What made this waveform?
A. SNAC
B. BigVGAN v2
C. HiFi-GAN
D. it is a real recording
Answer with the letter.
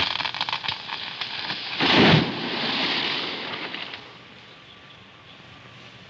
D